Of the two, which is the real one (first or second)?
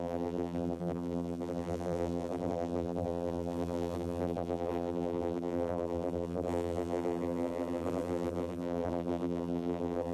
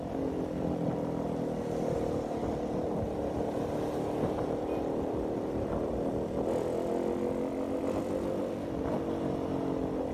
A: second